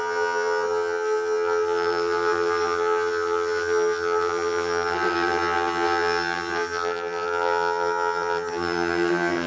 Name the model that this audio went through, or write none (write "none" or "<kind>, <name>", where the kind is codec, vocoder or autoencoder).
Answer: vocoder, HiFi-GAN